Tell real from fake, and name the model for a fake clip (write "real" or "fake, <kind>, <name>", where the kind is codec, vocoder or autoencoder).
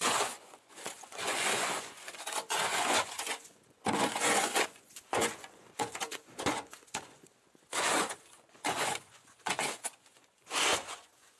fake, vocoder, Vocos